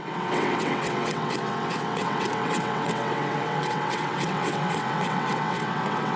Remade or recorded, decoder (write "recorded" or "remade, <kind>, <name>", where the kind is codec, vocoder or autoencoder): remade, vocoder, WaveNeXt